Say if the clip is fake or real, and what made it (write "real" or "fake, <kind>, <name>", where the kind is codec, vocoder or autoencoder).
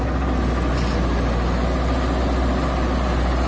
real